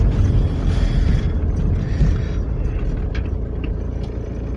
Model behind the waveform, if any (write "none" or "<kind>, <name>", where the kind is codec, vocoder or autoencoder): none